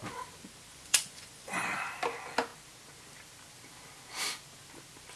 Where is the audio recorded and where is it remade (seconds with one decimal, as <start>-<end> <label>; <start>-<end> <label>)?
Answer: 0.0-0.7 recorded; 0.7-1.6 remade; 1.6-5.2 recorded